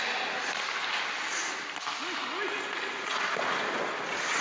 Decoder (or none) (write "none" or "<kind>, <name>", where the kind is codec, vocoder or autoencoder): none